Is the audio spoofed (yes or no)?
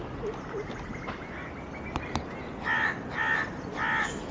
no